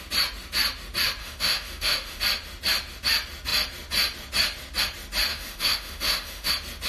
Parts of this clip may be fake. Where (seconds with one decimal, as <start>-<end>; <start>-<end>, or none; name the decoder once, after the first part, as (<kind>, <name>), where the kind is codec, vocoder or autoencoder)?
1.2-2.2 (autoencoder, DAC-VAE); 5.3-6.5